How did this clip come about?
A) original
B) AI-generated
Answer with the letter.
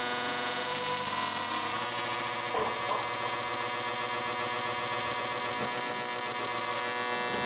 A